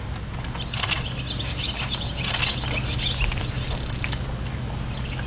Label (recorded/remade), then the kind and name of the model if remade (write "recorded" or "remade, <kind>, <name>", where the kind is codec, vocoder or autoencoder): recorded